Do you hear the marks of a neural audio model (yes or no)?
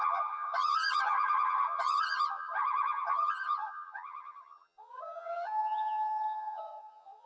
yes